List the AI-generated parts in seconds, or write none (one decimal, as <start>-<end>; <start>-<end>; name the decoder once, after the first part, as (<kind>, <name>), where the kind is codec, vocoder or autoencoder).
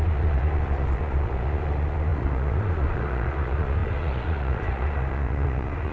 0.0-5.9 (vocoder, Vocos)